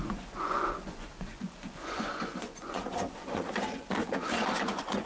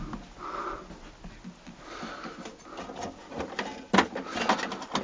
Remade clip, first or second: first